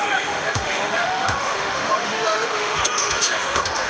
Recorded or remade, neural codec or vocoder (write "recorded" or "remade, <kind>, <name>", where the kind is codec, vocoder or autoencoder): remade, autoencoder, DAC-VAE